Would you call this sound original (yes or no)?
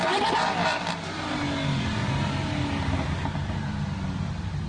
yes